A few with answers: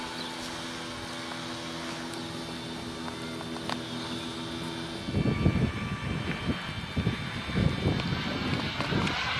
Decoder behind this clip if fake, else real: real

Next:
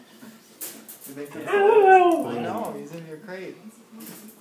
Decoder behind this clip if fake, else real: real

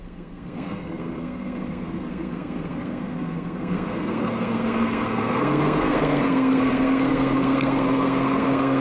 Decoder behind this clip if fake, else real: fake, codec, SNAC